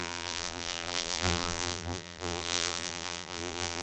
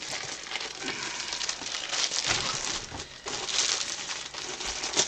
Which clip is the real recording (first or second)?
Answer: second